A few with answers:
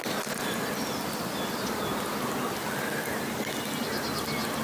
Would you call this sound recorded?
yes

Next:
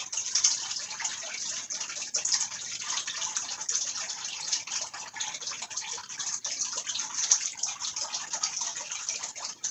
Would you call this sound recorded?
yes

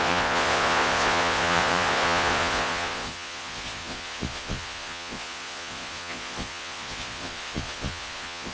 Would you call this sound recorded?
no